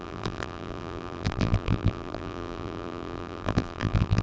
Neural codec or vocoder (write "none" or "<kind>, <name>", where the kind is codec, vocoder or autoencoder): vocoder, BigVGAN v2